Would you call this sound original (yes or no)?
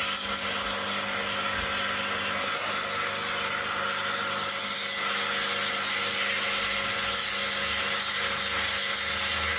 yes